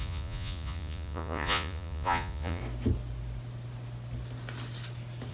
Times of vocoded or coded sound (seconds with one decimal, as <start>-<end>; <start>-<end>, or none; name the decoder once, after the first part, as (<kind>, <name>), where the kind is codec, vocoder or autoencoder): 0.0-2.6 (vocoder, Vocos)